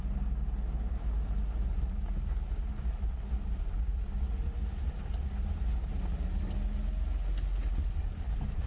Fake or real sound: real